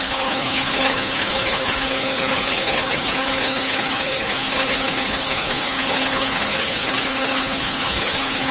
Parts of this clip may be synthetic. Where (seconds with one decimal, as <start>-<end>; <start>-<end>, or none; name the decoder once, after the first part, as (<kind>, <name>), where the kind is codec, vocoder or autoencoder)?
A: 0.0-8.5 (codec, HILCodec)